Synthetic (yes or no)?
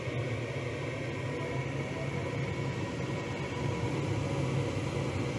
no